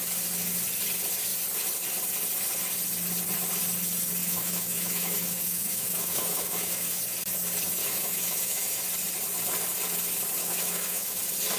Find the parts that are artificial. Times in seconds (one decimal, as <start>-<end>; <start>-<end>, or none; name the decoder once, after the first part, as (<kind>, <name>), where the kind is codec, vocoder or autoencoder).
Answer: 4.2-7.0 (autoencoder, DAC-VAE); 7.8-8.7; 10.4-11.2